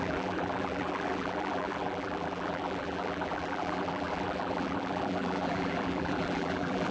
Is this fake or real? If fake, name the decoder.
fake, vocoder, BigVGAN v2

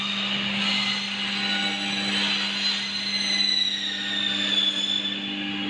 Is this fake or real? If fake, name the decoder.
real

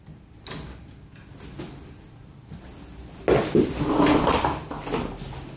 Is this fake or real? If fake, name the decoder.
real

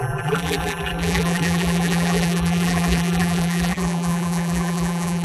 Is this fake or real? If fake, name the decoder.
fake, vocoder, BigVGAN v2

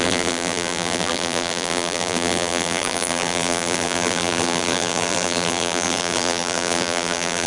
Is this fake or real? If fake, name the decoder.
fake, vocoder, BigVGAN v2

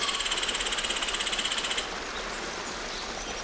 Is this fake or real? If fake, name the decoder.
real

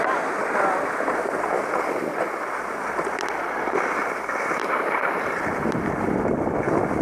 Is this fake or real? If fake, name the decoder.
real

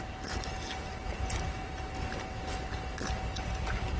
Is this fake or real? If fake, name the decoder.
real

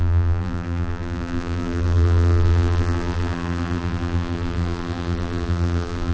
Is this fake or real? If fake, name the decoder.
fake, vocoder, BigVGAN v2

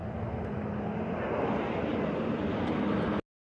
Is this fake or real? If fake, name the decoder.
real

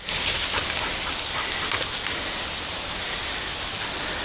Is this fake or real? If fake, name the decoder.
real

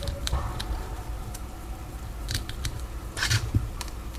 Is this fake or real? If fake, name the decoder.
fake, vocoder, BigVGAN v2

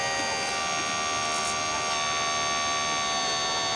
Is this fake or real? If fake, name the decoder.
real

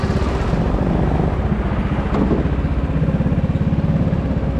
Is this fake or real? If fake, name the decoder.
real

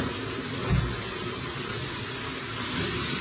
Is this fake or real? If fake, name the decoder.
fake, vocoder, BigVGAN v2